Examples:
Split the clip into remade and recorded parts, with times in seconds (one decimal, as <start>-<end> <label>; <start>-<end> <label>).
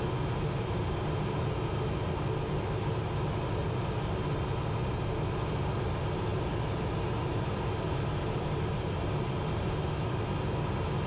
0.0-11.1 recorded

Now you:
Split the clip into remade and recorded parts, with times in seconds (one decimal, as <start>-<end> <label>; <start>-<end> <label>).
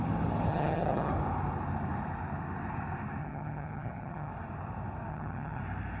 0.0-0.5 recorded; 0.5-1.1 remade; 1.1-3.2 recorded; 3.2-4.3 remade; 4.3-5.1 recorded; 5.1-5.6 remade; 5.6-6.0 recorded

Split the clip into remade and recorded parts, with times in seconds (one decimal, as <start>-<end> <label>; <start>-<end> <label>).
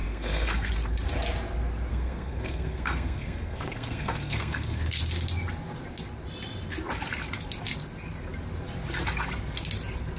0.0-0.7 remade; 0.7-1.9 recorded; 1.9-5.0 remade; 5.0-10.2 recorded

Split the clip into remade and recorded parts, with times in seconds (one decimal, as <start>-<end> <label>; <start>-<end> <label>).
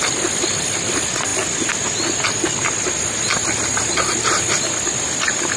0.0-5.6 recorded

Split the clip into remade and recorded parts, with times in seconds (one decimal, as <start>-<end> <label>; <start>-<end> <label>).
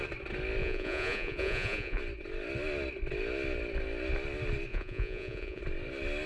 0.0-0.6 recorded; 0.6-2.0 remade; 2.0-4.7 recorded; 4.7-5.6 remade; 5.6-6.3 recorded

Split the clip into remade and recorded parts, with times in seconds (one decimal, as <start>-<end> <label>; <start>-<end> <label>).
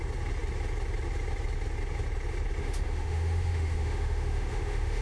0.0-2.6 recorded; 2.6-5.0 remade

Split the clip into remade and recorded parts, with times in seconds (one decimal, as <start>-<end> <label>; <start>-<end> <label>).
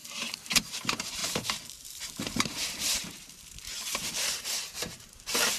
0.0-5.6 remade